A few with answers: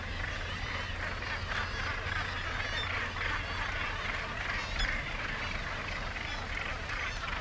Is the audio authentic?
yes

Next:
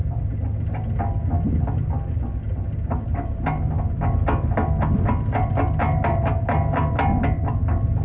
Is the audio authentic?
yes